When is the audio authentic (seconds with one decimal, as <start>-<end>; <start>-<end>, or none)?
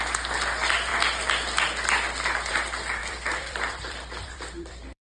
0.0-3.0